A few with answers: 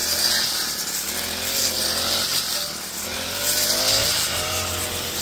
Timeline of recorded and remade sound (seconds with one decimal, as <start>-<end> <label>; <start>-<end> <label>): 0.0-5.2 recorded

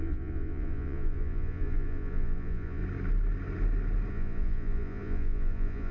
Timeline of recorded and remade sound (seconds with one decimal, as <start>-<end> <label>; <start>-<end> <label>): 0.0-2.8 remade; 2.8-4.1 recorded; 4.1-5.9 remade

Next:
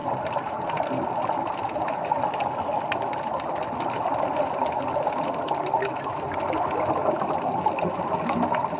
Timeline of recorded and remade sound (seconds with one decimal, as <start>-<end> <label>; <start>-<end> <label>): 0.0-8.8 recorded

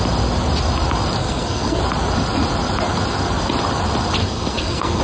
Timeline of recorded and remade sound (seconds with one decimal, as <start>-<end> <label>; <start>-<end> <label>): 0.0-1.2 recorded; 1.2-1.8 remade; 1.8-4.2 recorded; 4.2-5.0 remade

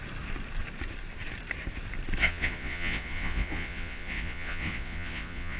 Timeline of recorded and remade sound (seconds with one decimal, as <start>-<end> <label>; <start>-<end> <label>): 0.0-2.2 recorded; 2.2-5.6 remade